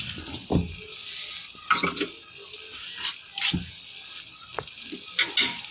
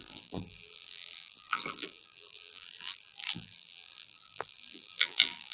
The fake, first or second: second